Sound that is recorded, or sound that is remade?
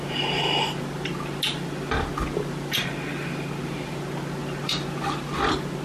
recorded